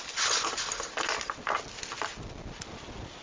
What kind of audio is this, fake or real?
real